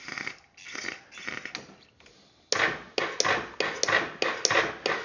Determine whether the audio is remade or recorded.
recorded